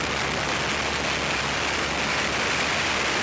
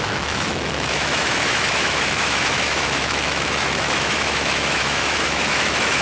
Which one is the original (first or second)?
first